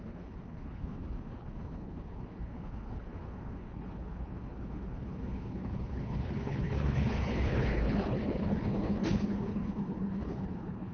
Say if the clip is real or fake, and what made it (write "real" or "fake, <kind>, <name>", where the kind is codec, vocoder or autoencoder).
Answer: fake, codec, HILCodec